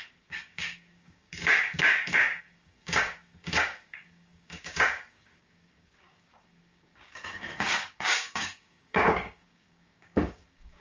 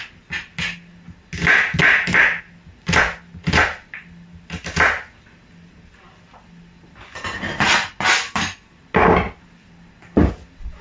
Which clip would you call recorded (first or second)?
second